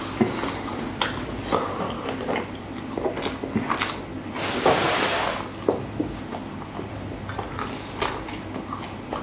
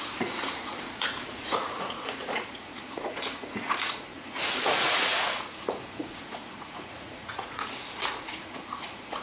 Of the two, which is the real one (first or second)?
first